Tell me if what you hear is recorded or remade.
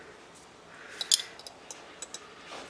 recorded